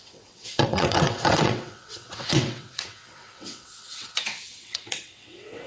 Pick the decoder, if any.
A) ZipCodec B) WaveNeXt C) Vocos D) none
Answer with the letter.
B